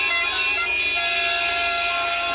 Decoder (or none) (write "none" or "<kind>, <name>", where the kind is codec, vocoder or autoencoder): none